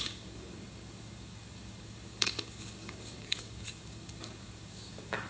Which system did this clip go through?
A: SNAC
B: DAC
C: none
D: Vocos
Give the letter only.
B